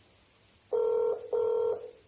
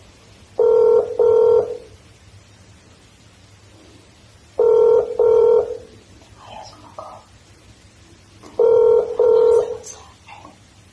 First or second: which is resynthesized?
second